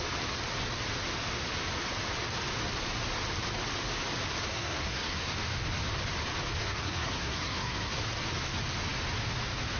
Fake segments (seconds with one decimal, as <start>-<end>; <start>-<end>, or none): 4.5-5.3; 6.6-7.9